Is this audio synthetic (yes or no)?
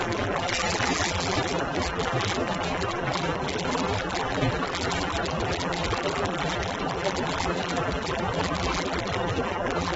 yes